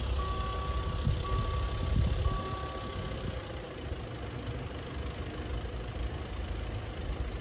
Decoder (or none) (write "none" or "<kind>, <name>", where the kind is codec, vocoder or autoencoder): none